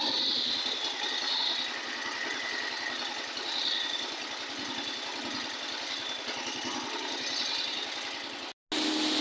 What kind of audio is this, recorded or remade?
recorded